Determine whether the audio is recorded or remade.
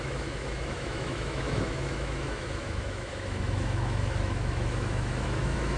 remade